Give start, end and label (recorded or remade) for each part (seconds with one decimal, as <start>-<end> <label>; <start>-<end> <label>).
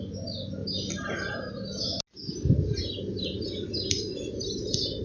0.0-0.6 recorded; 0.6-1.3 remade; 1.3-3.1 recorded; 3.1-4.5 remade; 4.5-5.0 recorded